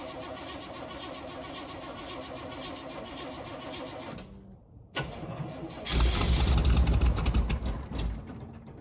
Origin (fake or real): real